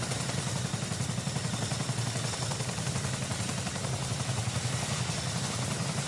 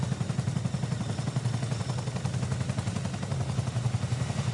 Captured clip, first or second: second